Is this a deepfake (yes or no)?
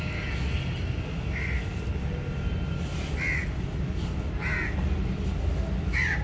no